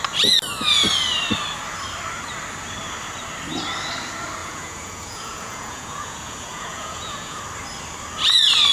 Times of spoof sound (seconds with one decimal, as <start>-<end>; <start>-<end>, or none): 4.4-7.4